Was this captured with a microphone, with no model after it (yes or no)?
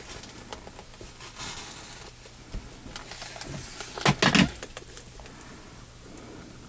yes